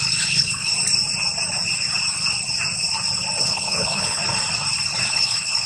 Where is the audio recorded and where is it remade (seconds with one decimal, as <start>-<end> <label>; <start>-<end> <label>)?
0.0-0.7 remade; 0.7-3.4 recorded; 3.4-4.2 remade; 4.2-5.1 recorded; 5.1-5.7 remade